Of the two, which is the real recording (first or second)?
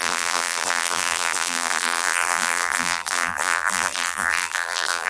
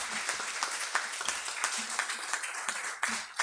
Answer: second